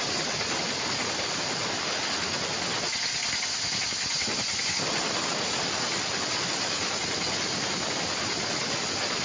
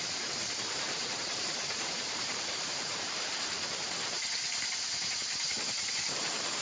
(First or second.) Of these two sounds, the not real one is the second